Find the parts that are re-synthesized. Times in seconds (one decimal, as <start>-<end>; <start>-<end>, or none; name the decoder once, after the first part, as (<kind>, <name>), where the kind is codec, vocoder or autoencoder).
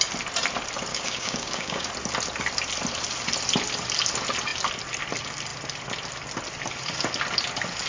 0.9-1.9 (codec, DAC)